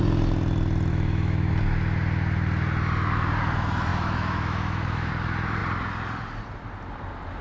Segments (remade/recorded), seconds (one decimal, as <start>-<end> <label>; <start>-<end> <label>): 0.0-0.9 recorded; 0.9-1.5 remade; 1.5-3.9 recorded; 3.9-5.1 remade; 5.1-7.4 recorded